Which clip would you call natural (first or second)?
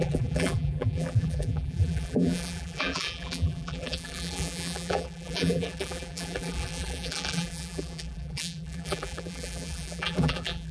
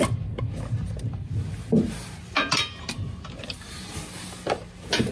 second